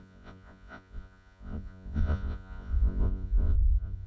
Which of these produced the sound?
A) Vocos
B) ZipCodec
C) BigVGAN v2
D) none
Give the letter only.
A